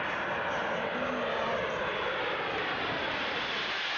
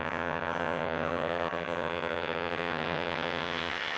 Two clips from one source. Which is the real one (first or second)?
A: first